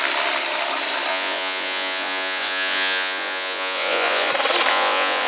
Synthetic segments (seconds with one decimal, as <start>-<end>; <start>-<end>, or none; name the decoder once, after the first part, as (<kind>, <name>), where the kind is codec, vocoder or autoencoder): 1.1-4.3 (vocoder, Vocos); 4.7-5.3